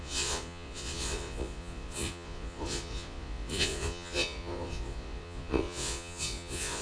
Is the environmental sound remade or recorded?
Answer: remade